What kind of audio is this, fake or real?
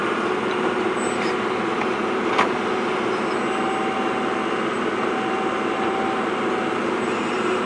real